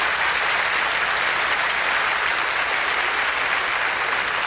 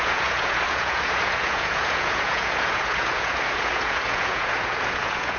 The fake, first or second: second